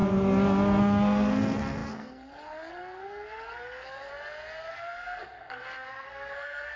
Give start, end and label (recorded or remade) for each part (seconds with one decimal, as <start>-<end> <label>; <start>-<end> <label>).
0.0-0.8 recorded; 0.8-4.1 remade; 4.1-4.7 recorded; 4.7-6.8 remade